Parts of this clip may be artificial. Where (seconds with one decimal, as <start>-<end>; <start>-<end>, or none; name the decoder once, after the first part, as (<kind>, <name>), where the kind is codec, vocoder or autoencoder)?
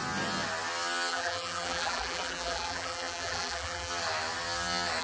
1.1-3.9 (vocoder, BigVGAN v2)